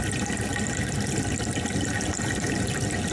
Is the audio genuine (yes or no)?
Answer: yes